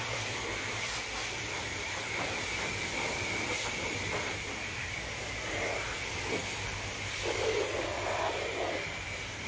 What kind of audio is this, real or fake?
fake